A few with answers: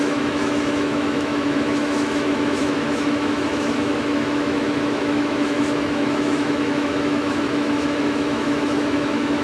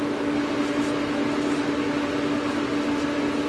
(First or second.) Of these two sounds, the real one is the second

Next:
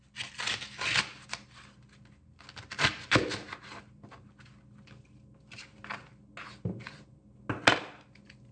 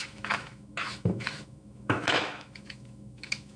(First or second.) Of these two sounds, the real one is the first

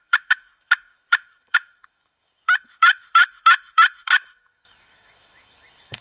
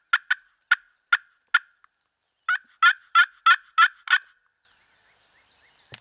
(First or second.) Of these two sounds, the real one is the second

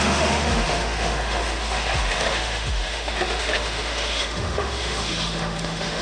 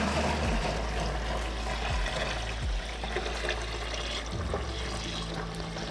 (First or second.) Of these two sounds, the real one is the second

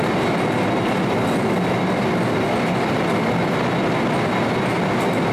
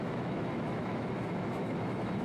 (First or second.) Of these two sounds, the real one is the first